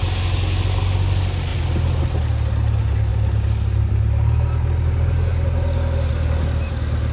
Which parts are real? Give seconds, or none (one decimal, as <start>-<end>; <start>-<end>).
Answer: 0.0-7.1